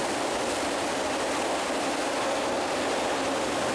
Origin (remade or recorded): recorded